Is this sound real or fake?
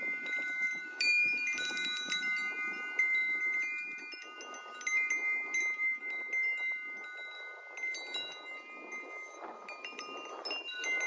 real